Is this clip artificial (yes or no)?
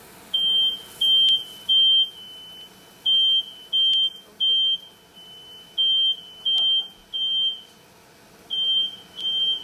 no